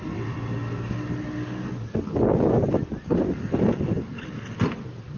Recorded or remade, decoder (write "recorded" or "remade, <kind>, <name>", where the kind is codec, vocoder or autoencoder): recorded